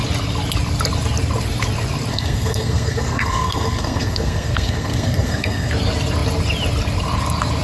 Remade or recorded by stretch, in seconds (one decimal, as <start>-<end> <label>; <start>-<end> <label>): 0.0-2.1 recorded; 2.1-5.7 remade; 5.7-7.6 recorded